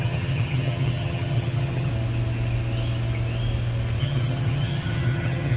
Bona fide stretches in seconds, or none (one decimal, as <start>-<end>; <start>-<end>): 1.9-4.0